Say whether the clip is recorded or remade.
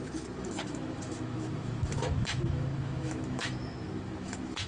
remade